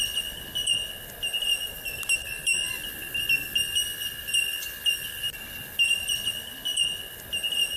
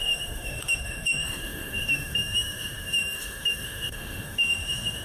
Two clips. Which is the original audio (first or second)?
first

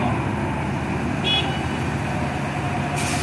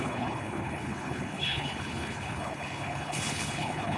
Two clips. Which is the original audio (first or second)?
first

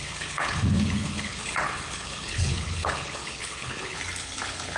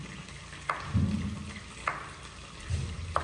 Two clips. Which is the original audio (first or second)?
second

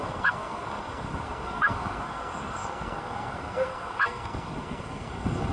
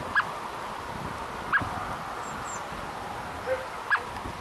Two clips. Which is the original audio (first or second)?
second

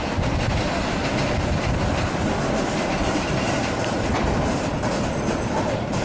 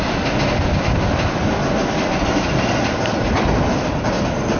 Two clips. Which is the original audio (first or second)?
second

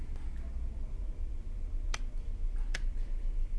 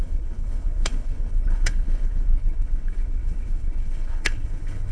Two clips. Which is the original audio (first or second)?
first